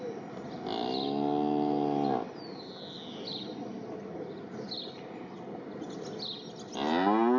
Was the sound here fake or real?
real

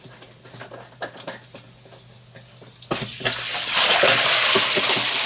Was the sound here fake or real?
real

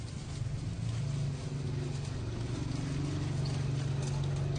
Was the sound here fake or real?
real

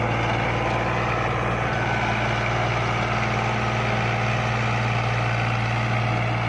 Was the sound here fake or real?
real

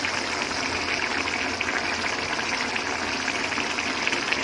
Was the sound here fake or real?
real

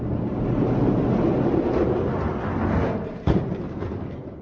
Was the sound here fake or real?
real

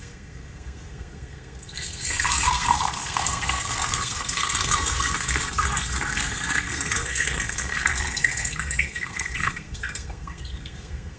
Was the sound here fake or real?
fake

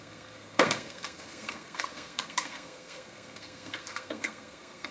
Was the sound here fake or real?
fake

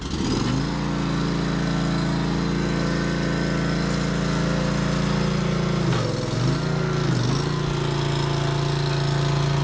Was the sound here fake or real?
real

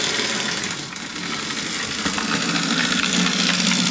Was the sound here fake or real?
real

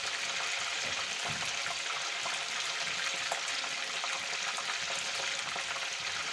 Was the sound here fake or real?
real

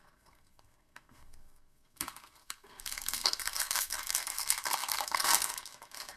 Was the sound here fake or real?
fake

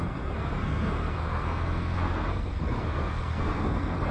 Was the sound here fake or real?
fake